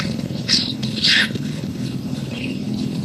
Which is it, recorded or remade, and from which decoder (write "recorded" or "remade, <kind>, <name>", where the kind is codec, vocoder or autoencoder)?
remade, codec, HILCodec